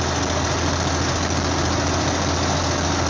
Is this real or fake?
real